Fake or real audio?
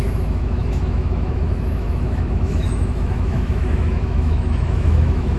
fake